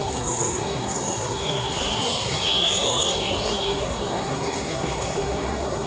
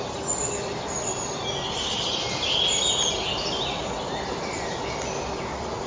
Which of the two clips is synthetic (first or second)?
first